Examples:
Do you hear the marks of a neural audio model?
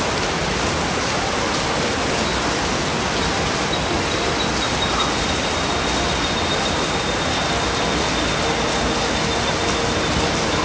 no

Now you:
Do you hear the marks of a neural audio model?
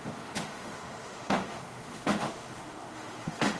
yes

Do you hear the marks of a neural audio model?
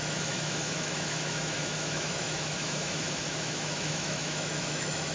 yes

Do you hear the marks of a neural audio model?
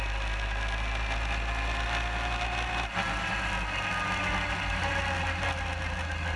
no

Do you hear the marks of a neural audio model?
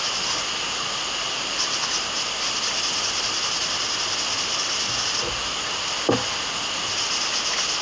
no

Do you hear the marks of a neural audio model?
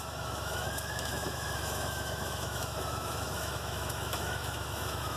yes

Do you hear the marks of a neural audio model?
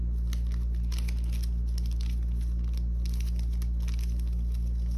no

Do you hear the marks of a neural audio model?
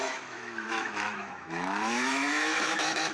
yes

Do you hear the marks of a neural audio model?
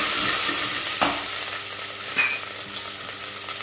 no